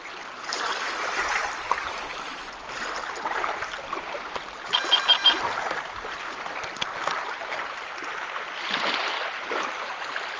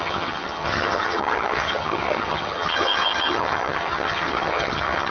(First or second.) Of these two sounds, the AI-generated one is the second